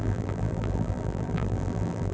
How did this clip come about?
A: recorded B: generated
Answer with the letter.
B